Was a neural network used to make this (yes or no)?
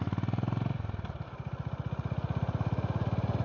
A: no